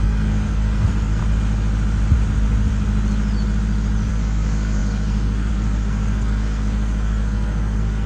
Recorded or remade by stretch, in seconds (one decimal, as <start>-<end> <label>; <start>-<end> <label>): 0.0-1.2 remade; 1.2-4.1 recorded; 4.1-8.1 remade